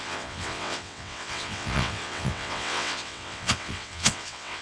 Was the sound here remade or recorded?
remade